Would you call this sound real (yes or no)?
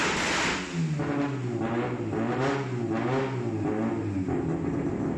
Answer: yes